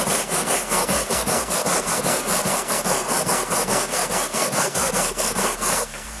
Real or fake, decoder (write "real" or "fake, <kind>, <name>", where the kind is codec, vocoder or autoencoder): fake, codec, SNAC